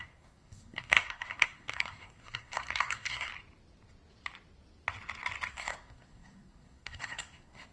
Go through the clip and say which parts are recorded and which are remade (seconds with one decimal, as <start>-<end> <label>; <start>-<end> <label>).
0.0-3.3 remade; 3.3-5.5 recorded; 5.5-7.7 remade